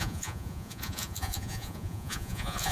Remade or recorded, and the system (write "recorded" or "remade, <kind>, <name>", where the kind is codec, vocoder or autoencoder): remade, vocoder, Vocos